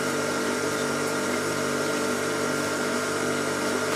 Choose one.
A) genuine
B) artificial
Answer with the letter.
B